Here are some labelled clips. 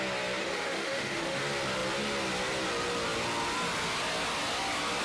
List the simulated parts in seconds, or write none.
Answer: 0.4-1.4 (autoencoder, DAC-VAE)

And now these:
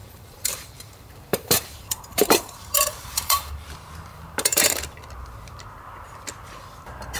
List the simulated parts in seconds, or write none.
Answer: 0.0-3.5 (vocoder, BigVGAN v2); 4.1-4.8

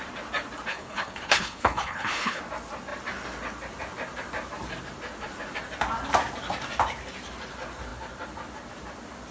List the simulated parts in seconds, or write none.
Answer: 0.7-2.4 (codec, HILCodec)

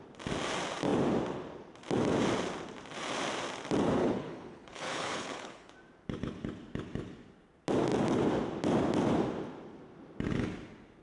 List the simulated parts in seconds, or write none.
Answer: 4.0-5.7 (codec, HILCodec)

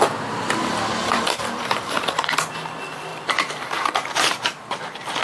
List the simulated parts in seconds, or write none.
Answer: 1.0-2.3 (vocoder, BigVGAN v2); 3.1-4.3

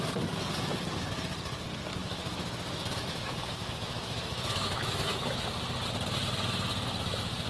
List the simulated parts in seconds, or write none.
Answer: 2.0-5.4 (autoencoder, DAC-VAE)

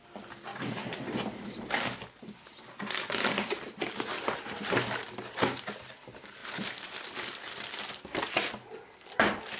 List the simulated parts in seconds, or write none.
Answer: 0.5-1.6 (vocoder, BigVGAN v2); 6.4-7.0

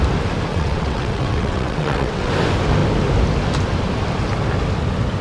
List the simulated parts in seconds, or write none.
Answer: 0.5-2.3 (vocoder, WaveNeXt)